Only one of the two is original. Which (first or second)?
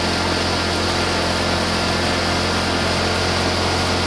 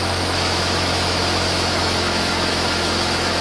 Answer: first